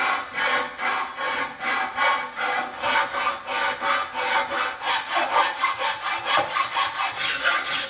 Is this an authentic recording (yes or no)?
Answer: yes